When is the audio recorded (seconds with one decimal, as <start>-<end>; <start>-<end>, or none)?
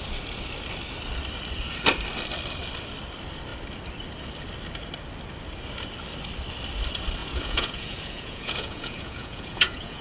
0.0-7.2